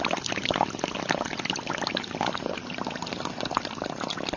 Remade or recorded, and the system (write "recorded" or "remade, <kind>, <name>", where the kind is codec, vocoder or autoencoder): recorded